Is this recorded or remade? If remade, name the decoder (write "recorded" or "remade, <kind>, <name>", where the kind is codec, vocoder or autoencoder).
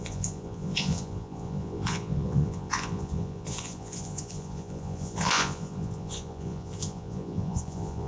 remade, vocoder, Vocos